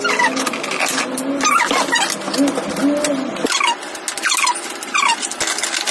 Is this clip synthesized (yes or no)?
no